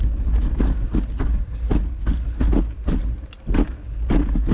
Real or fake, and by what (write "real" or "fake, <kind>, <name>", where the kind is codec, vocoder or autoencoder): real